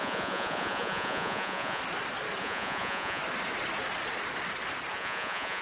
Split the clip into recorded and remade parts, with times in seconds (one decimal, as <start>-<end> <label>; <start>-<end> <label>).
0.0-1.8 remade; 1.8-2.4 recorded; 2.4-3.2 remade; 3.2-4.9 recorded; 4.9-5.6 remade